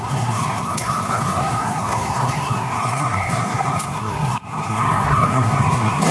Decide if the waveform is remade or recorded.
remade